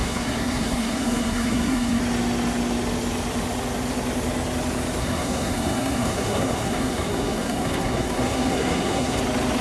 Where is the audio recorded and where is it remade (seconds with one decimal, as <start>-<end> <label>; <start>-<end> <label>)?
0.0-2.0 remade; 2.0-5.0 recorded; 5.0-9.2 remade; 9.2-9.6 recorded